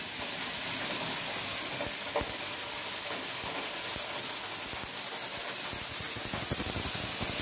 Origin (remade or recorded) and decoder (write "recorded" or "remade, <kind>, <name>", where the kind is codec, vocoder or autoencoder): recorded